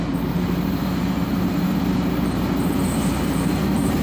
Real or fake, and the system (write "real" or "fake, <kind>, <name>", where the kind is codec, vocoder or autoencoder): fake, vocoder, BigVGAN v2